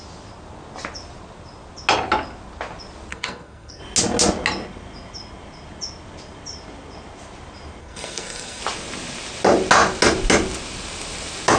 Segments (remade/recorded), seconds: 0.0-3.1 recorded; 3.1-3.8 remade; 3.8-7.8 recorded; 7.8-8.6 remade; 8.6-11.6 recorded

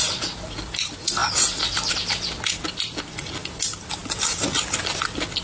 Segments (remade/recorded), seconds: 0.0-5.4 recorded

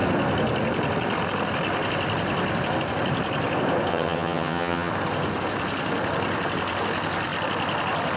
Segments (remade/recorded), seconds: 0.0-3.9 recorded; 3.9-4.9 remade; 4.9-8.2 recorded